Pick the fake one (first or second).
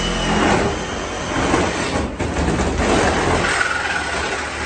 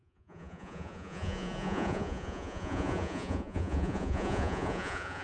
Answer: second